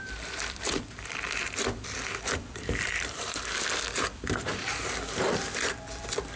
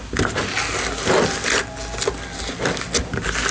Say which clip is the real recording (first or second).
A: second